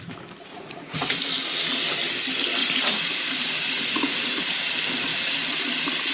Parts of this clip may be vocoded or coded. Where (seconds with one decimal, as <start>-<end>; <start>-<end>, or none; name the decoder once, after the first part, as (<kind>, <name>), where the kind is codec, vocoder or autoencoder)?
0.5-1.1 (vocoder, Vocos); 2.6-4.4; 5.1-5.6

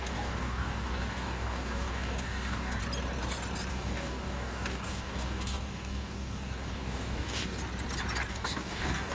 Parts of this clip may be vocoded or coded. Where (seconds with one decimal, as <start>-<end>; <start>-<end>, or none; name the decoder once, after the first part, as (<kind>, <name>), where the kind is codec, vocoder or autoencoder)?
0.0-2.8 (codec, DAC); 3.7-7.6; 8.3-9.1